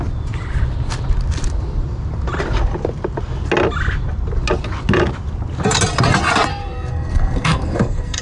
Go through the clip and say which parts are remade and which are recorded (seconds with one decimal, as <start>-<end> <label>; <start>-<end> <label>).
0.0-6.5 recorded; 6.5-8.2 remade